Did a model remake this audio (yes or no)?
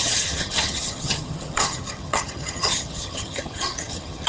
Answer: yes